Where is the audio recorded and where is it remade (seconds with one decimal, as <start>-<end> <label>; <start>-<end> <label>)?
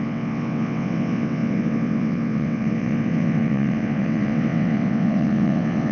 0.0-5.9 remade